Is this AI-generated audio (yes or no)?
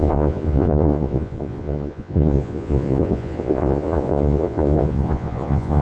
yes